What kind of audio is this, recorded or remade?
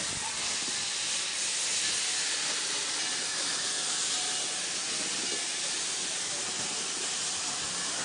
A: recorded